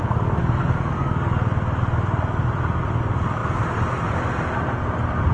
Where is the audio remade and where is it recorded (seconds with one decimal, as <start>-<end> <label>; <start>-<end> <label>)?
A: 0.0-0.4 recorded; 0.4-1.3 remade; 1.3-5.3 recorded